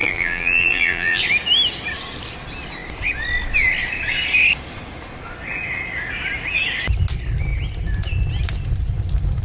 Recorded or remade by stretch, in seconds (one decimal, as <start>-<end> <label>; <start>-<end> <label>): 0.0-1.2 remade; 1.2-9.4 recorded